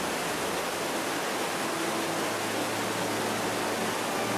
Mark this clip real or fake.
real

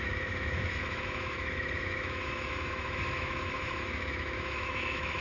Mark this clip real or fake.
fake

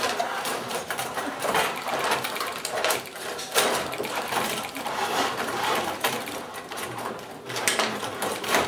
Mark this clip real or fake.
fake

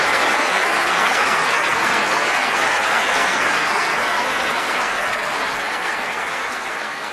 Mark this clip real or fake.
fake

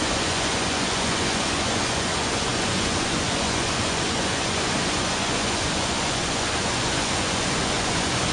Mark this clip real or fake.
fake